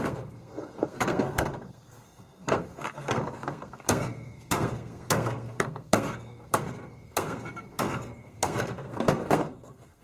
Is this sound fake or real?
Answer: fake